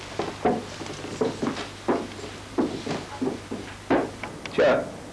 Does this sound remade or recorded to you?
recorded